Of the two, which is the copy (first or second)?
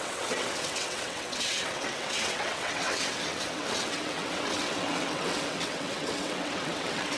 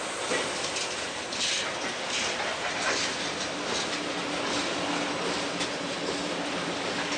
first